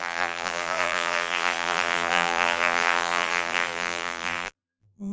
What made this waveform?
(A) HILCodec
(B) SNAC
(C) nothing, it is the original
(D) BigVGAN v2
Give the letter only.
D